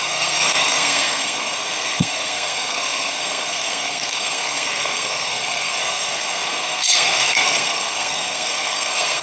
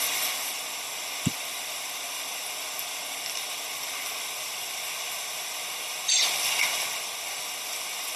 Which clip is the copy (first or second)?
first